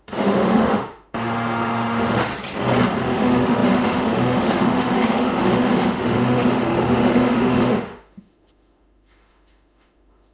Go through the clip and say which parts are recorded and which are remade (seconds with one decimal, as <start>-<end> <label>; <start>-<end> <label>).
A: 0.0-2.3 remade; 2.3-3.0 recorded; 3.0-10.3 remade